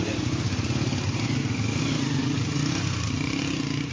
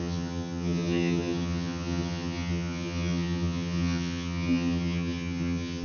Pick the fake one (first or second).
second